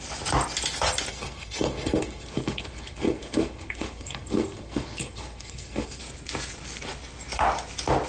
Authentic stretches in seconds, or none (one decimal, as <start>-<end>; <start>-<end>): 0.0-1.1; 6.0-8.1